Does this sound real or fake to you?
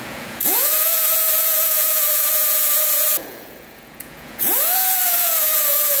fake